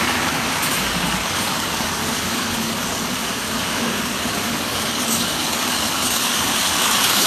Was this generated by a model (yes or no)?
yes